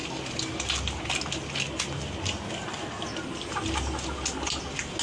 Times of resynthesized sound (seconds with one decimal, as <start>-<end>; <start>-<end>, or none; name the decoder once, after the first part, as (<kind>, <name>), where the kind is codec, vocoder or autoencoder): none